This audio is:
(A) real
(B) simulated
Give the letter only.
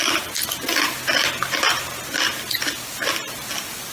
A